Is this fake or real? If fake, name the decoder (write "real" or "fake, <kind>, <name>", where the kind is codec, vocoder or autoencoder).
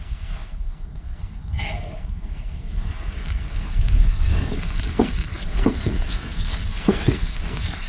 fake, codec, SNAC